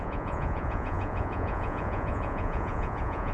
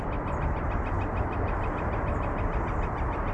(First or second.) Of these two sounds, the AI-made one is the first